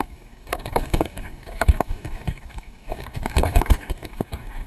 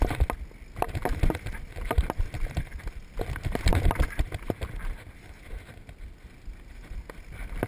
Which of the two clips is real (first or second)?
second